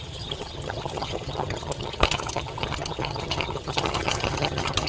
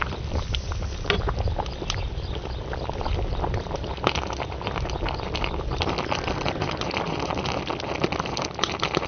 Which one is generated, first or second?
first